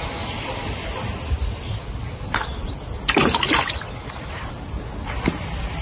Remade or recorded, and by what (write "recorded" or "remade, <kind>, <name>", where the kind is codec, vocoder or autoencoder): recorded